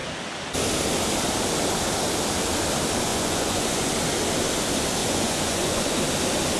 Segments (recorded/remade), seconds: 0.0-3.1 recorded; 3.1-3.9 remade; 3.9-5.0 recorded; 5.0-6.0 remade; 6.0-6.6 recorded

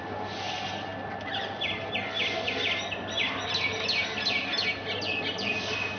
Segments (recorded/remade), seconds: 0.0-6.0 recorded

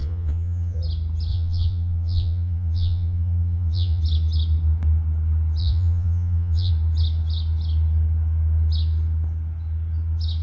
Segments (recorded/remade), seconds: 0.0-0.8 remade; 0.8-1.3 recorded; 1.3-4.0 remade; 4.0-5.6 recorded; 5.6-6.7 remade; 6.7-10.4 recorded